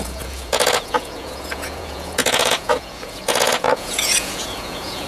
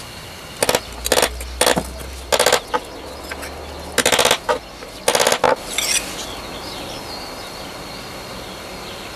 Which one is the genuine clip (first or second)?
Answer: second